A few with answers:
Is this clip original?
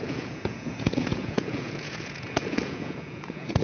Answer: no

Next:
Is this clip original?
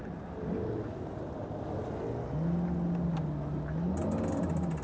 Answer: yes